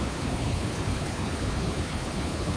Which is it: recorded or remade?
remade